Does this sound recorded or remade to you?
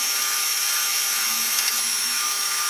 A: remade